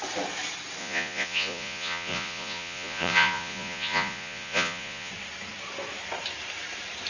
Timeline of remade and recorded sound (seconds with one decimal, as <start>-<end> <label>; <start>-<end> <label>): 0.0-0.8 recorded; 0.8-5.1 remade; 5.1-7.1 recorded